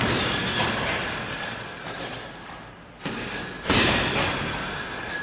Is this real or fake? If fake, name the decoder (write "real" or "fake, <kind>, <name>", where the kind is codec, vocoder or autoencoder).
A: real